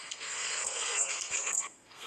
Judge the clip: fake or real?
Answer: fake